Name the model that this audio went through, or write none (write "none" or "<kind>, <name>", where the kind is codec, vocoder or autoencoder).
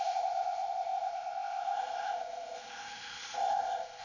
codec, ZipCodec